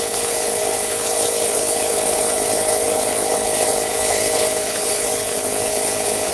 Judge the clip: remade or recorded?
remade